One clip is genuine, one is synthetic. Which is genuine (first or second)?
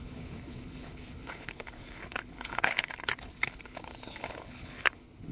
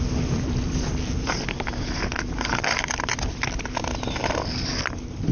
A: second